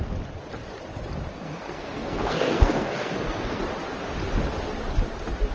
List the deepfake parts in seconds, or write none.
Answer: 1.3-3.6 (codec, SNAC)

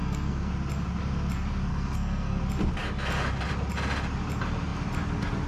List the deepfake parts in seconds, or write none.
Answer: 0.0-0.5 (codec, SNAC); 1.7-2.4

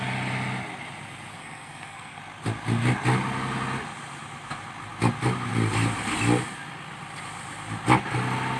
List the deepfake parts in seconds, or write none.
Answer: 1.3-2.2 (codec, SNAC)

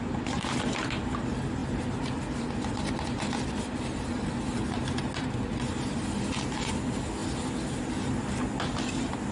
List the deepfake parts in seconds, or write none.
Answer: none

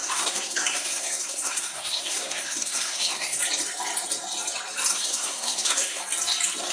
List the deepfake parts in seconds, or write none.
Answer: 0.0-3.4 (codec, SNAC); 4.9-6.0

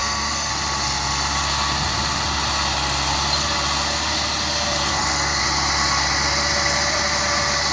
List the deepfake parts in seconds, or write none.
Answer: 0.0-0.5 (codec, SNAC); 4.9-5.4